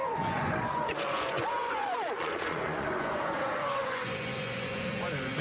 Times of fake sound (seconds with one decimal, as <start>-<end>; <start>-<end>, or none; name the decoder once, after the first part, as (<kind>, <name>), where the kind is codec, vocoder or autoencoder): 0.0-5.4 (vocoder, Vocos)

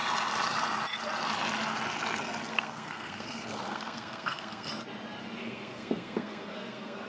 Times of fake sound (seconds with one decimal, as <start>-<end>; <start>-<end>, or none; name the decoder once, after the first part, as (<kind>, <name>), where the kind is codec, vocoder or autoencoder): 2.5-4.7 (codec, SNAC); 5.4-7.1

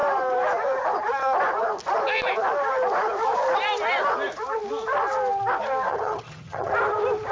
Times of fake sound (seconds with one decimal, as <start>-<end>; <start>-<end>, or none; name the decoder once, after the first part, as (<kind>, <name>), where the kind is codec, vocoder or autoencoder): 5.9-6.7 (vocoder, HiFi-GAN)

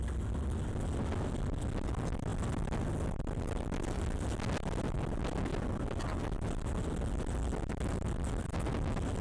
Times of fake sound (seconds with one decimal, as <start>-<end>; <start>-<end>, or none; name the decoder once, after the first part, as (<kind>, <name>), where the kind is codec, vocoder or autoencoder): none

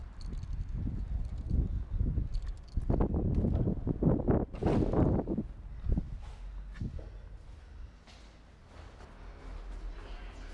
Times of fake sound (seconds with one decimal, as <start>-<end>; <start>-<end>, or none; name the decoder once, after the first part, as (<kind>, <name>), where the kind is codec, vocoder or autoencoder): none

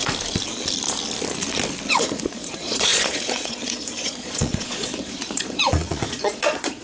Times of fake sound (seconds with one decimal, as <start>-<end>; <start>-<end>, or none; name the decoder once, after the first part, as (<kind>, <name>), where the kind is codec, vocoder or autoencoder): 1.9-6.8 (vocoder, Vocos)

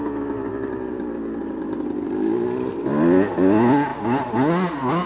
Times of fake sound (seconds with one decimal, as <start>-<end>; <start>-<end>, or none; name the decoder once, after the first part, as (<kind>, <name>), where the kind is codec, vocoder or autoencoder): none

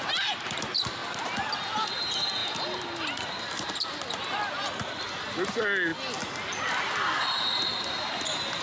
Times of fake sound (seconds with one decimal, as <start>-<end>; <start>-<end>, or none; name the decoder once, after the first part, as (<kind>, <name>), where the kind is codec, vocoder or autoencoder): none